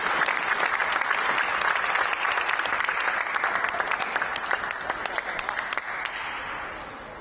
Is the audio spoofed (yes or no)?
no